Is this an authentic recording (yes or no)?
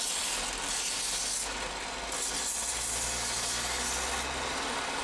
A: yes